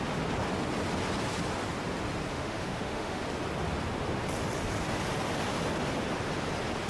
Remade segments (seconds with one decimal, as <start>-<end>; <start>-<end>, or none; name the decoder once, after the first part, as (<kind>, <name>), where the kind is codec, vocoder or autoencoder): 2.3-3.2 (autoencoder, DAC-VAE)